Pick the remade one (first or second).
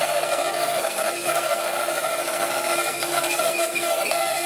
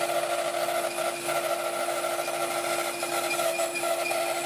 first